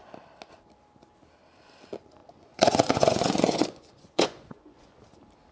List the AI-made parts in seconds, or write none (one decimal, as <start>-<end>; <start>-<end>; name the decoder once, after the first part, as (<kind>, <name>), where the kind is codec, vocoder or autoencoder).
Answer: 2.2-5.0 (vocoder, Vocos)